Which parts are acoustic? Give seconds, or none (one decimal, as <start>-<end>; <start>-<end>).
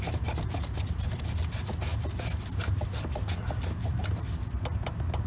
0.0-5.3